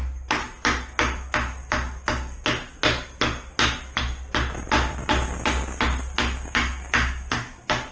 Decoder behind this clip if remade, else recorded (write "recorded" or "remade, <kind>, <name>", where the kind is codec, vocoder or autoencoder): recorded